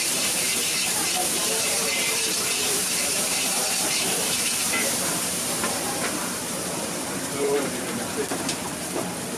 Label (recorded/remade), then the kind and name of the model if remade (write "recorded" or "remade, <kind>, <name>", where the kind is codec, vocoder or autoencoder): remade, vocoder, BigVGAN v2